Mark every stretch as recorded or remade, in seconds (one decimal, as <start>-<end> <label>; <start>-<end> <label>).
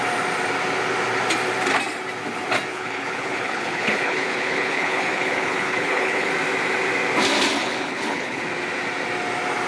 0.0-2.7 recorded; 2.7-6.3 remade; 6.3-7.6 recorded; 7.6-8.4 remade; 8.4-9.7 recorded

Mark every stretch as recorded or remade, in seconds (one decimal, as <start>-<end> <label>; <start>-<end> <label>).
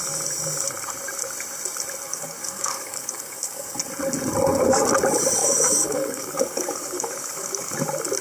0.0-2.1 recorded; 2.1-3.8 remade; 3.8-5.4 recorded; 5.4-7.7 remade; 7.7-8.2 recorded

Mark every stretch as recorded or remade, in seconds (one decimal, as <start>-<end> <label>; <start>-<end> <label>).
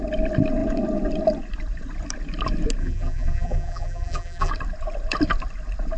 0.0-2.8 recorded; 2.8-4.5 remade; 4.5-6.0 recorded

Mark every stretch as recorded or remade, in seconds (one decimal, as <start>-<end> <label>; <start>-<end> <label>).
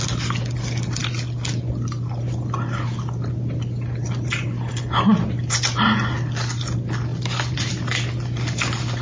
0.0-7.1 recorded; 7.1-7.7 remade; 7.7-9.0 recorded